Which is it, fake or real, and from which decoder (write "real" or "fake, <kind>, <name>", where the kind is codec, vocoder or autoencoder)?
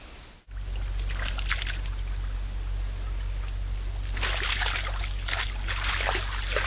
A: real